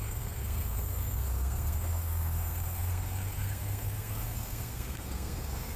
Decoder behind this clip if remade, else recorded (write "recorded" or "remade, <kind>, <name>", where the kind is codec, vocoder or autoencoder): remade, codec, SNAC